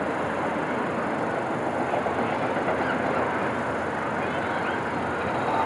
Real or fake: real